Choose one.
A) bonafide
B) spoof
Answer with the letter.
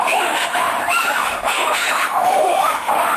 B